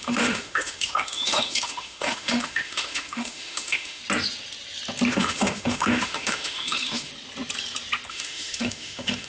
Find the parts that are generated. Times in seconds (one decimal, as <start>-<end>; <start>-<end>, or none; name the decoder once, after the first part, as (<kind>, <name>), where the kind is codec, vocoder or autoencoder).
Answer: 0.0-4.0 (autoencoder, DAC-VAE); 5.1-7.1; 8.1-9.3

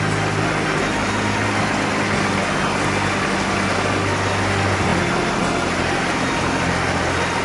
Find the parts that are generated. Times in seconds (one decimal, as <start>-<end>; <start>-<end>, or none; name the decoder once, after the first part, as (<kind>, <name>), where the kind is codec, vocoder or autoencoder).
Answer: none

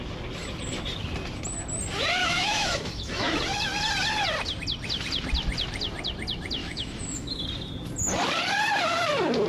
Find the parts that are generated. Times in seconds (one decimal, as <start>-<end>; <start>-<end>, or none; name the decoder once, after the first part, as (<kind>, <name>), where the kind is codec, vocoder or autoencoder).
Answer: 2.2-3.4 (autoencoder, DAC-VAE); 6.6-7.4

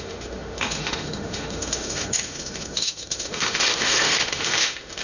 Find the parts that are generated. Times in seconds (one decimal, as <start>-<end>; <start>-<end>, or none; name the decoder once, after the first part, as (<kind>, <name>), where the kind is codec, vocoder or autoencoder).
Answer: 0.0-5.0 (autoencoder, DAC-VAE)

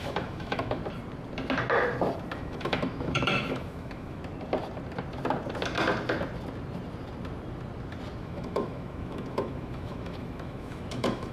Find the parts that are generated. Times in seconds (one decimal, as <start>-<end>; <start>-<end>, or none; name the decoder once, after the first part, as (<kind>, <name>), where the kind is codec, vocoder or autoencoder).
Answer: 0.0-0.8 (autoencoder, DAC-VAE); 2.4-4.2; 8.2-11.3

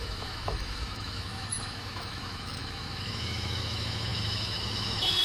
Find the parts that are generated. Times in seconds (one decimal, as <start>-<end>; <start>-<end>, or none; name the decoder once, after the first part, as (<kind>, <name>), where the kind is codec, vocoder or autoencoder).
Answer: 0.0-5.2 (autoencoder, DAC-VAE)

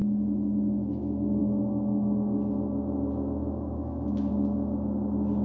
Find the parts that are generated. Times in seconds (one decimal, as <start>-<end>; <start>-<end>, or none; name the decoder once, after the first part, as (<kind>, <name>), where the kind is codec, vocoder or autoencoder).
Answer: 1.4-4.3 (autoencoder, DAC-VAE)

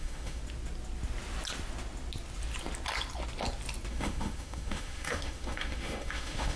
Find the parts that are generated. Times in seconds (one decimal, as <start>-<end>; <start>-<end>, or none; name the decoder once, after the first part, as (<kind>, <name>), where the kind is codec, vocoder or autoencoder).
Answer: 0.0-0.4 (autoencoder, DAC-VAE); 3.9-6.6